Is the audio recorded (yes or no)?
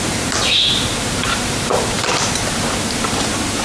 no